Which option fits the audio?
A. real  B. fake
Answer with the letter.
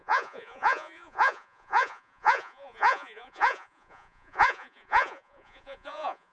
B